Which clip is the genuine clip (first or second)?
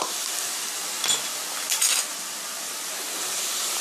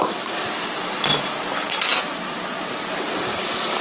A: second